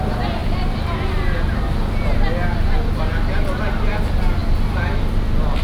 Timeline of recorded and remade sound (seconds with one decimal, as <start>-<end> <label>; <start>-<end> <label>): 0.0-5.6 recorded